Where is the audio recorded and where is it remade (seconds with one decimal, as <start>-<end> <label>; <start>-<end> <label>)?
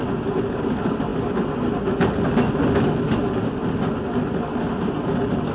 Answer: 0.0-5.5 recorded